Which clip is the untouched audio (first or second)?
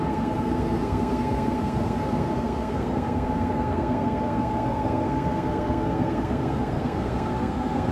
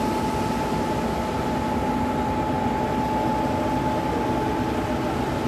second